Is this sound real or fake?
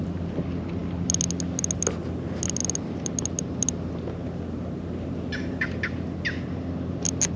real